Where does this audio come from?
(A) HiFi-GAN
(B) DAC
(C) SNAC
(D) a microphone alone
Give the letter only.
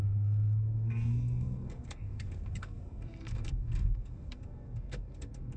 C